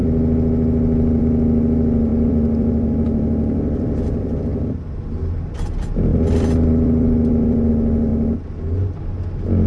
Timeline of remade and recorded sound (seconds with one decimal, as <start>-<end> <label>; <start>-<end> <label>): 0.0-2.1 recorded; 2.1-4.4 remade; 4.4-6.1 recorded; 6.1-7.7 remade; 7.7-9.7 recorded